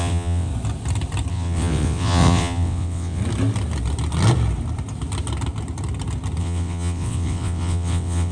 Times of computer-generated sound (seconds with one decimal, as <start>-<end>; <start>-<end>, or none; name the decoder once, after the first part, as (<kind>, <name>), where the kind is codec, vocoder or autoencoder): 0.0-0.5 (vocoder, WaveNeXt); 1.3-3.2; 6.4-8.3